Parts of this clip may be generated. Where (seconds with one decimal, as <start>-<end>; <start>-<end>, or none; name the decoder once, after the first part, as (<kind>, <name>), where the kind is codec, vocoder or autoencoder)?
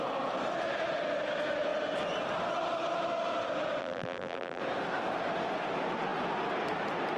3.8-4.6 (vocoder, BigVGAN v2)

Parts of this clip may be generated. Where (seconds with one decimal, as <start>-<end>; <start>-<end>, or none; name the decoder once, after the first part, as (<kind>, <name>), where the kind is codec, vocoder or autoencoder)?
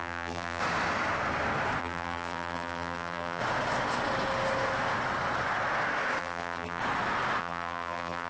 0.0-0.6 (vocoder, BigVGAN v2); 1.8-3.4; 6.2-6.8; 7.4-8.3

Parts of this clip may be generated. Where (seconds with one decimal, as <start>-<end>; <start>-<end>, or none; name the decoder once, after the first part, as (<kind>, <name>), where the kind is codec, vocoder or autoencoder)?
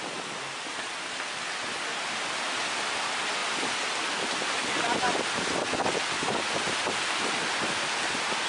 1.9-2.5 (vocoder, BigVGAN v2)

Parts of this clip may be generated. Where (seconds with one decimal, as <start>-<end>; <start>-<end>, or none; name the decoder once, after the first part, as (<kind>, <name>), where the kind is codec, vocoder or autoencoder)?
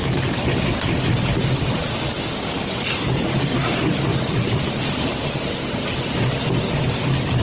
0.0-1.0 (vocoder, BigVGAN v2); 4.1-5.9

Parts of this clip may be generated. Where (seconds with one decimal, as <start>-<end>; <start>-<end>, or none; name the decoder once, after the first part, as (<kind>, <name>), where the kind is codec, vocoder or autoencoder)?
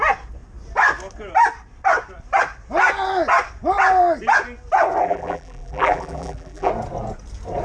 5.0-6.7 (vocoder, BigVGAN v2)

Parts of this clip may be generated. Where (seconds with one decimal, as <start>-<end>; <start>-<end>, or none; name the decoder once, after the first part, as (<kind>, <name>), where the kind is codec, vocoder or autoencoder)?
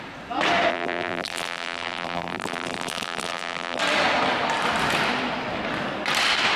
0.7-3.8 (vocoder, BigVGAN v2)